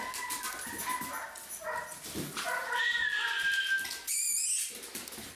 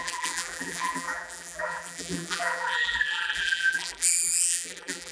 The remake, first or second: second